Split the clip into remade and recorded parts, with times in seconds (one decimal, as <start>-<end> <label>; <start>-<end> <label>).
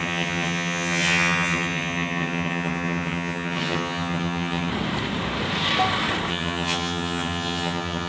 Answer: 0.0-4.7 remade; 4.7-6.3 recorded; 6.3-8.1 remade